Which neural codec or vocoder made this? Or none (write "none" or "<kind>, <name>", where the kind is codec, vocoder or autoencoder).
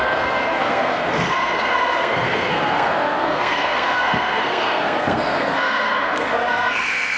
codec, SNAC